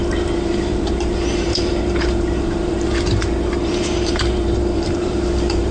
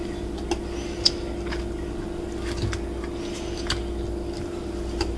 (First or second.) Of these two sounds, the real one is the second